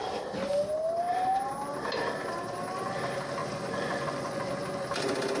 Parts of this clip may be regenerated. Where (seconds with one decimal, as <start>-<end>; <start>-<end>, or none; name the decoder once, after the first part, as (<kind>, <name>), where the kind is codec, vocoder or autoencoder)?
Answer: 3.4-4.4 (vocoder, Vocos)